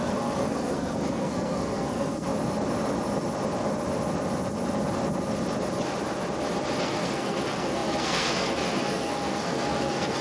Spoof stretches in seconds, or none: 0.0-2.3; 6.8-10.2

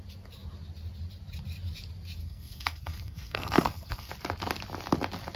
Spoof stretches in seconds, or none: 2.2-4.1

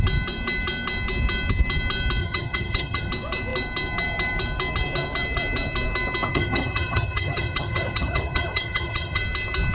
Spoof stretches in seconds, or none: 2.2-3.1; 6.3-9.2

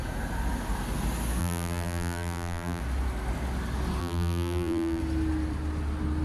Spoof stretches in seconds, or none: 1.4-2.8; 4.0-5.0

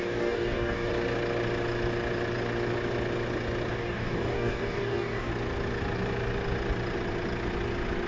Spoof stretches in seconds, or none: 0.0-0.9; 3.7-5.3